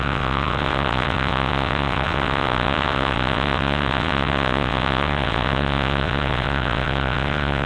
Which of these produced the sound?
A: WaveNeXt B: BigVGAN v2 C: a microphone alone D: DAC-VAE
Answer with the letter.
A